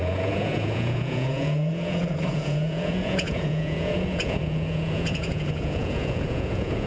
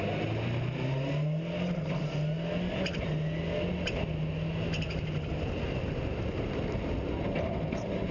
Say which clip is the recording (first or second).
second